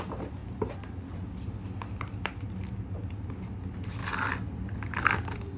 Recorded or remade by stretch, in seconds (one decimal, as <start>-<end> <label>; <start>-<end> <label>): 0.0-5.6 recorded